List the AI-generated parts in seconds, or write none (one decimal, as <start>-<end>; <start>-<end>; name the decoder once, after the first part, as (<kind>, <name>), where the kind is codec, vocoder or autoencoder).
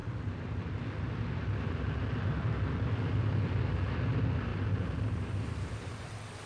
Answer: 0.0-0.8 (vocoder, BigVGAN v2); 4.5-6.5